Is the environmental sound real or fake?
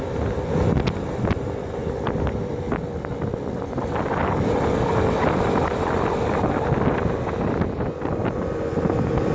real